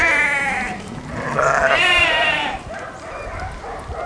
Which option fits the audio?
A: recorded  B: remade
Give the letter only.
A